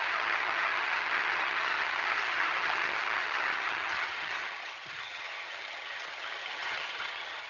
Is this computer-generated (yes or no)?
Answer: yes